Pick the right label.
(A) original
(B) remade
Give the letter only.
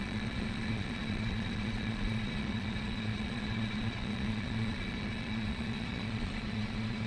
B